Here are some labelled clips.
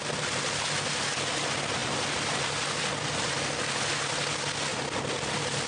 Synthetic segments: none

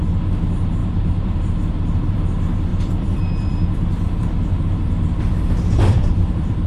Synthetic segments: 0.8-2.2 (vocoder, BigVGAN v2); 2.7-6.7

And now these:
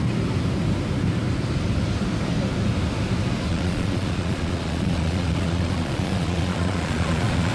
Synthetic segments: 3.5-7.5 (vocoder, Vocos)